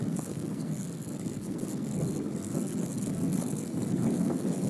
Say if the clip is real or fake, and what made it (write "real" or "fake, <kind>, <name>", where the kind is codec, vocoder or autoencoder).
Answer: fake, codec, SNAC